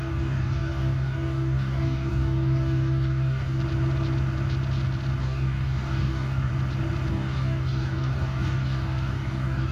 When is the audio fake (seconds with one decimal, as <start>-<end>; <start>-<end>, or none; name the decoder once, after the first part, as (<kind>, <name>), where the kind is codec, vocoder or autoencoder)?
0.0-3.6 (codec, DAC); 5.2-6.5; 7.1-9.7